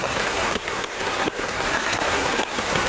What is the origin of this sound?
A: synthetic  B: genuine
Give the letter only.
A